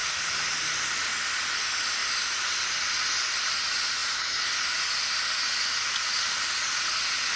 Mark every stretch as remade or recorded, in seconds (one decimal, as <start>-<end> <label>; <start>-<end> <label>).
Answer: 0.0-7.4 recorded